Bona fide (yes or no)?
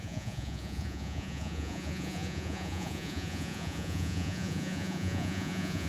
no